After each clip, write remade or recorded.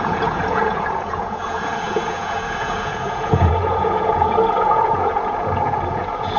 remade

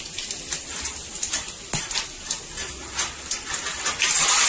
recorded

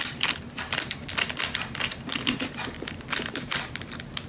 remade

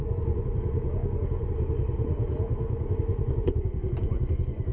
remade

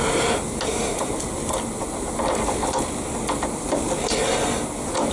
recorded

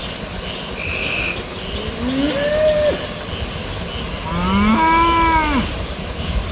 recorded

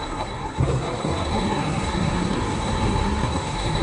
remade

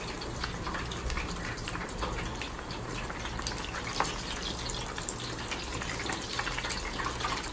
recorded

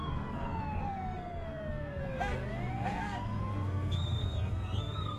remade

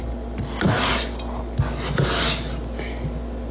recorded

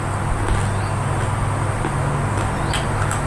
recorded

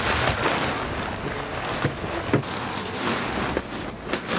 recorded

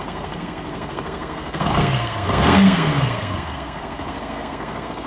remade